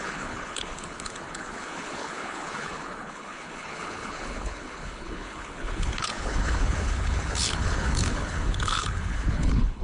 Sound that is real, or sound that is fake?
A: fake